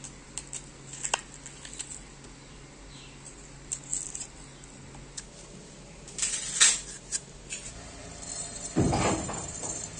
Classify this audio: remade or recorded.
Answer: recorded